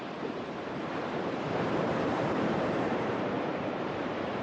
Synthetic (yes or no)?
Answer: yes